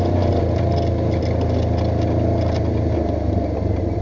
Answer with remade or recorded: recorded